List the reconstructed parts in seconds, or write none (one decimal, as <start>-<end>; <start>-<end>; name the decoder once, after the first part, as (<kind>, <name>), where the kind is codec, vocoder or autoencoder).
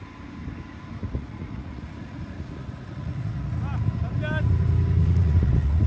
1.0-3.5 (vocoder, Vocos); 5.0-5.9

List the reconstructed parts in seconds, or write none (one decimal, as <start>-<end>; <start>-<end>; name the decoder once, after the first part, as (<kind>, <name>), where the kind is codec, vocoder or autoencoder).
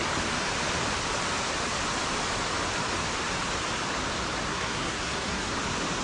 4.5-5.5 (codec, SNAC)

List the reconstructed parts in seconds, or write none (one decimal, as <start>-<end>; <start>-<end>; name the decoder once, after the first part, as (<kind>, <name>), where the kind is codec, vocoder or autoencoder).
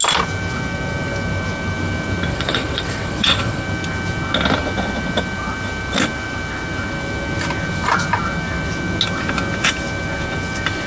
2.3-3.6 (vocoder, WaveNeXt)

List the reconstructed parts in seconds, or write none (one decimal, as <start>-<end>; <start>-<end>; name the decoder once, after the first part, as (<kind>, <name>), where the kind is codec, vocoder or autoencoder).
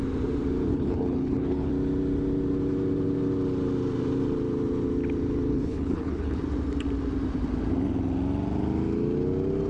0.7-1.7 (codec, HILCodec); 5.5-6.4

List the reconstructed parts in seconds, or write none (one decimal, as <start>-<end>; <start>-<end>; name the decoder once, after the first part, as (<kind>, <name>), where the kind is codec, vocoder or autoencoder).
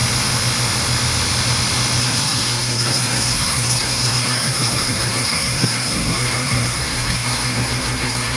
2.0-8.4 (codec, SNAC)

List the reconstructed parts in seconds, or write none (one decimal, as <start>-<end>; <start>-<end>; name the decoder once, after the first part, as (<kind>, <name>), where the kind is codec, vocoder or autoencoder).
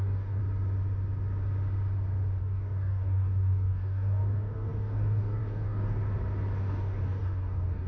0.0-0.4 (codec, DAC); 2.4-6.0; 6.6-7.9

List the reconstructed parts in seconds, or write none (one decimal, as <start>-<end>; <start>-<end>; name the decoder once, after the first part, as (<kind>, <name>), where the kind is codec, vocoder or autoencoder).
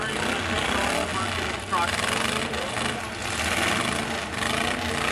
none